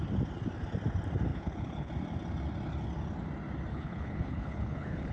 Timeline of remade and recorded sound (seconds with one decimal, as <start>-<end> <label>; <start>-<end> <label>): 0.0-1.3 recorded; 1.3-1.9 remade; 1.9-3.7 recorded; 3.7-5.1 remade